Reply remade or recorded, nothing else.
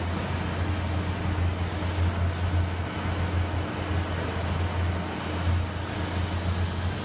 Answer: recorded